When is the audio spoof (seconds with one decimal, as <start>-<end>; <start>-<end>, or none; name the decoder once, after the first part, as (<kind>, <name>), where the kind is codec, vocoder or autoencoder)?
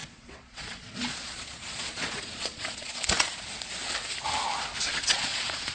0.0-3.4 (vocoder, Vocos); 4.9-5.7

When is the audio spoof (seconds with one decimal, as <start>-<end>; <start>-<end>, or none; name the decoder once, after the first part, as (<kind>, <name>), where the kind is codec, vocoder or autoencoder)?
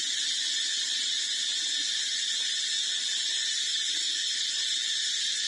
none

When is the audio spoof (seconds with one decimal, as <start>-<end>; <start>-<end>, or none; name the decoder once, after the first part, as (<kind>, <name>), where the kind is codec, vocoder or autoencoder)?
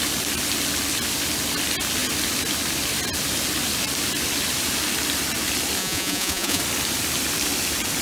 5.8-6.6 (vocoder, Vocos)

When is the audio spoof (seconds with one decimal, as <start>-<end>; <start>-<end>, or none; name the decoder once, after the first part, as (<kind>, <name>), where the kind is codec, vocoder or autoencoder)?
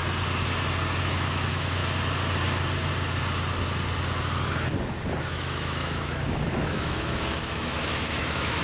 1.0-1.8 (autoencoder, DAC-VAE); 5.2-8.6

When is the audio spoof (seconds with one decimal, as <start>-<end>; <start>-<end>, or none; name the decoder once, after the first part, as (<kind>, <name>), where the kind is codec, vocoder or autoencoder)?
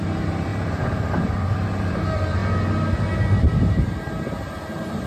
0.0-0.5 (vocoder, BigVGAN v2); 1.9-2.4; 3.5-5.1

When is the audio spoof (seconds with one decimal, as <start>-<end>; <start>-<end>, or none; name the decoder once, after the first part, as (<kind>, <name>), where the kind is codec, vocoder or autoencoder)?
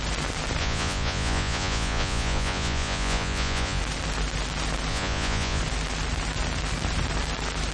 0.6-3.8 (vocoder, Vocos); 4.9-5.6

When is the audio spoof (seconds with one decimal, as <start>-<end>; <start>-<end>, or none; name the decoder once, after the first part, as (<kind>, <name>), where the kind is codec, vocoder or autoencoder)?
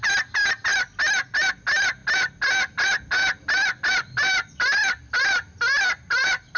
none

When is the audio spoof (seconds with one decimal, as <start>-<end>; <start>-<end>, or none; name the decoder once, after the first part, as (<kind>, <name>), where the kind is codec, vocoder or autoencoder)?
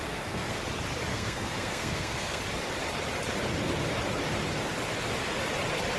0.0-0.6 (codec, SNAC); 1.1-2.4